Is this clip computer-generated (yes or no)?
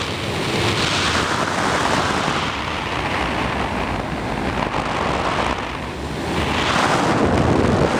no